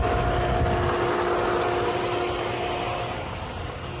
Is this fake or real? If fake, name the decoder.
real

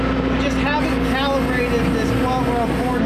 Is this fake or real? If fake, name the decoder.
real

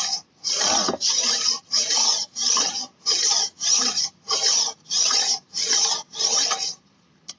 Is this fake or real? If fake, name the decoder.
fake, vocoder, BigVGAN v2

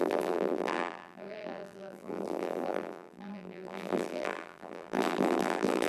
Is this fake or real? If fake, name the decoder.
fake, vocoder, BigVGAN v2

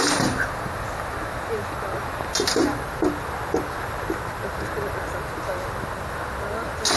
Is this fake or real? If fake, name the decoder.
real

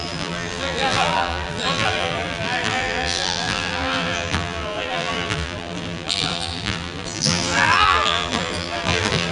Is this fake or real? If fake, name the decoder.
fake, vocoder, BigVGAN v2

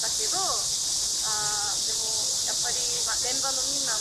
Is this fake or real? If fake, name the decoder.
real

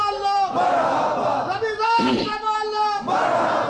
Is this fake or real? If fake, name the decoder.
fake, vocoder, BigVGAN v2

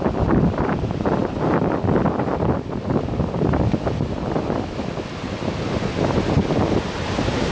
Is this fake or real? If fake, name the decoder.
fake, vocoder, BigVGAN v2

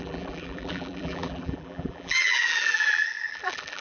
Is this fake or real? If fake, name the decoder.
fake, vocoder, BigVGAN v2